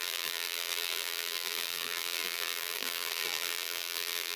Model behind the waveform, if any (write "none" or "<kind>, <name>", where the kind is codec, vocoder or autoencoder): vocoder, BigVGAN v2